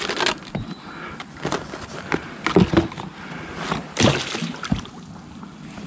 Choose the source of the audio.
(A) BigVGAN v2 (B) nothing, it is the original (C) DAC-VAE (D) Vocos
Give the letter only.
B